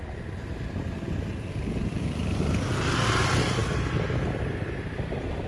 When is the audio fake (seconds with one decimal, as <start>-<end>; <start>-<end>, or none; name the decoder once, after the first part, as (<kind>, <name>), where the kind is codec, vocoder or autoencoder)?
none